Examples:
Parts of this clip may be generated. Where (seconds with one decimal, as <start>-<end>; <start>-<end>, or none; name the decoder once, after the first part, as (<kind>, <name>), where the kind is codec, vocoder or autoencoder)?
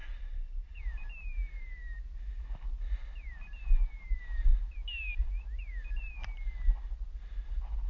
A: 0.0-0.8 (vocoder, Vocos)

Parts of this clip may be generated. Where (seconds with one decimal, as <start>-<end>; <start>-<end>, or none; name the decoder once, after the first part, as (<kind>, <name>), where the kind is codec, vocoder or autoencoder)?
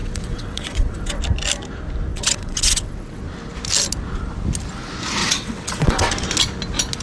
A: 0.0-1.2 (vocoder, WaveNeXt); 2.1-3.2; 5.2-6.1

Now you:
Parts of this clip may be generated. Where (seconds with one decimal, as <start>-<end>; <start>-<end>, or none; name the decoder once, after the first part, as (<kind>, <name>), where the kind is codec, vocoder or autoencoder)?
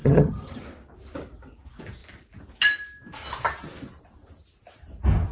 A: 0.0-0.6 (vocoder, HiFi-GAN)